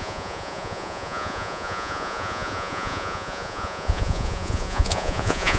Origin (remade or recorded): remade